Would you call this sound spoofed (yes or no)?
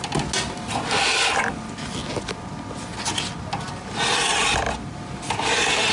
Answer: no